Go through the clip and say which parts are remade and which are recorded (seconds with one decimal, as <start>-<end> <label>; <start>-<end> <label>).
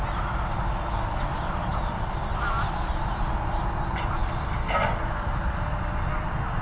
0.0-6.6 recorded